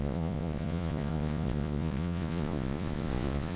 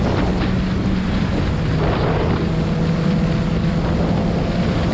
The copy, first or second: first